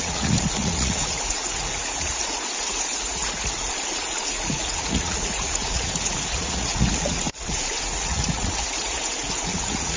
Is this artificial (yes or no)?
yes